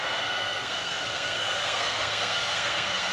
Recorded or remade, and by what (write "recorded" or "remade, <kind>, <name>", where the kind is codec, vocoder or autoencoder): remade, codec, SNAC